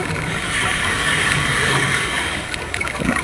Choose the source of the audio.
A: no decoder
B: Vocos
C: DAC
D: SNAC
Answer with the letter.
C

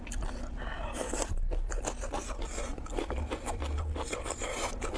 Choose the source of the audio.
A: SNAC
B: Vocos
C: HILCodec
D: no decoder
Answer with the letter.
D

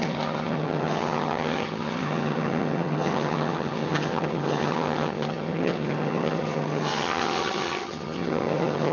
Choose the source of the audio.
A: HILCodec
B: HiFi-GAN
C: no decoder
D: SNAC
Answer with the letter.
B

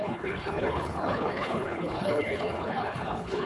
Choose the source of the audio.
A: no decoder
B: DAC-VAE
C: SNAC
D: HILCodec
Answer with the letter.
D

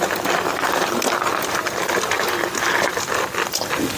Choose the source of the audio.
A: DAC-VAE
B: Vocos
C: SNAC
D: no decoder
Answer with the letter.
D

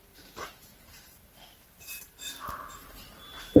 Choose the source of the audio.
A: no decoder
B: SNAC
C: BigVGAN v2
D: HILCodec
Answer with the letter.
C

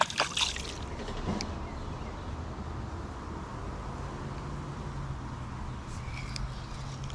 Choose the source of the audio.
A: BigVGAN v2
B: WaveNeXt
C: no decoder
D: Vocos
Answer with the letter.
C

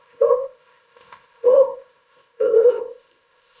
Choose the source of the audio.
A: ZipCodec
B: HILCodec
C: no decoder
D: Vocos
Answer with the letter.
A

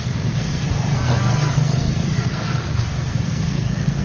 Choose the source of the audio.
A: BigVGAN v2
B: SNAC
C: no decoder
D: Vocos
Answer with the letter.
B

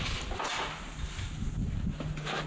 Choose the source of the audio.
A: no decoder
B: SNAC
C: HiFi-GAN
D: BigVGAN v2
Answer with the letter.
A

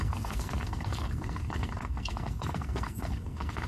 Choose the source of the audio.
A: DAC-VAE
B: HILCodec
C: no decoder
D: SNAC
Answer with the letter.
D